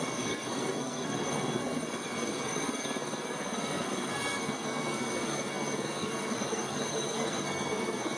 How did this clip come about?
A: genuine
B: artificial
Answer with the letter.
B